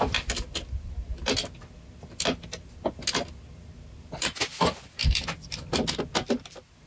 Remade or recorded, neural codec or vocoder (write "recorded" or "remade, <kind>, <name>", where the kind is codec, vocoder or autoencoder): recorded